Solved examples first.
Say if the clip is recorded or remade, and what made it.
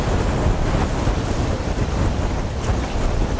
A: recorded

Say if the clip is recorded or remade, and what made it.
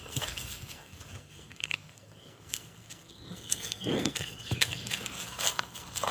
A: remade, codec, SNAC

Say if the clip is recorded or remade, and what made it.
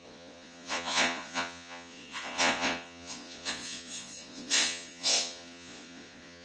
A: remade, vocoder, Vocos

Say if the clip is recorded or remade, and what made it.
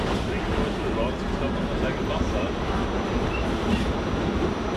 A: recorded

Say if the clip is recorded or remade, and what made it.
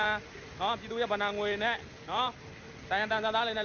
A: recorded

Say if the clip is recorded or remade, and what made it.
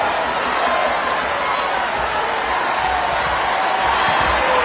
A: recorded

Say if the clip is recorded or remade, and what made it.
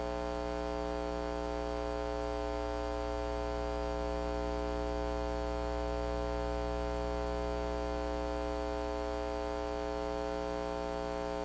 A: recorded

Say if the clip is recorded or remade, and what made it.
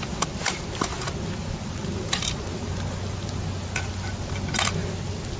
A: recorded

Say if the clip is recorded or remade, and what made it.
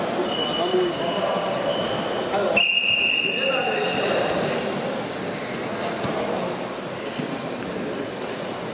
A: recorded